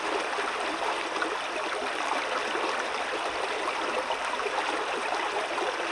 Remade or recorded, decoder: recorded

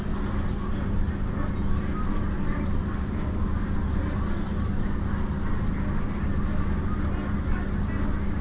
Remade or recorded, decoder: recorded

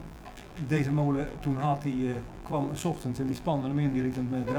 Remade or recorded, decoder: remade, vocoder, BigVGAN v2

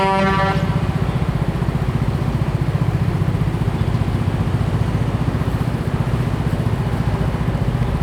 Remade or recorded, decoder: recorded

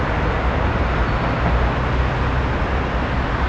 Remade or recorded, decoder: recorded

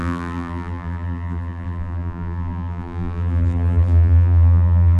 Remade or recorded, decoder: remade, vocoder, BigVGAN v2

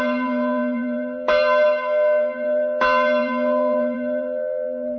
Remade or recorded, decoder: remade, vocoder, BigVGAN v2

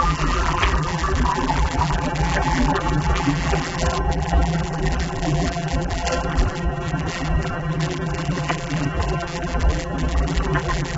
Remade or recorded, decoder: remade, vocoder, BigVGAN v2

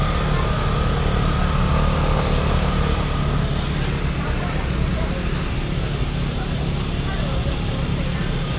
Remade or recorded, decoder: recorded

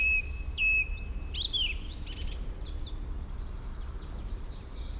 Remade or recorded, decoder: recorded